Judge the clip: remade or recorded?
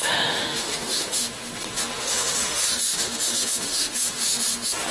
remade